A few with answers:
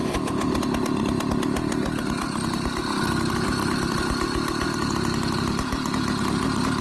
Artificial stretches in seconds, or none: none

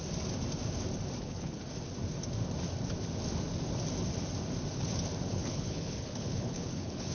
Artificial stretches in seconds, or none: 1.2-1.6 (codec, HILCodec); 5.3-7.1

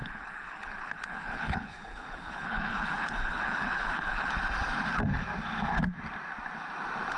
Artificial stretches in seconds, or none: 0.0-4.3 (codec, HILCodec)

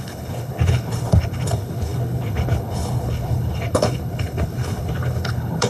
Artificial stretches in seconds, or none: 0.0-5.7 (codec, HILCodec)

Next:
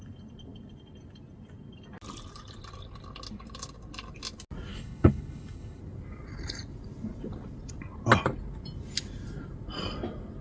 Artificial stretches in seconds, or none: 4.7-5.8 (codec, HILCodec)

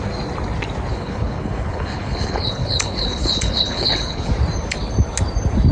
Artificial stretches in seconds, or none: 0.9-4.3 (codec, HILCodec)